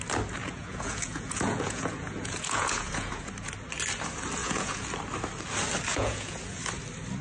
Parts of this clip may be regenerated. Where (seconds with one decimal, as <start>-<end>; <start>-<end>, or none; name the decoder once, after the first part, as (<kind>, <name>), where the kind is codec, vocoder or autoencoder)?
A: 0.4-3.3 (vocoder, Vocos); 4.4-4.9; 5.9-6.6